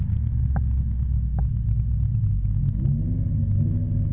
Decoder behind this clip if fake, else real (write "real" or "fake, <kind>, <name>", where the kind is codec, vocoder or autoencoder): real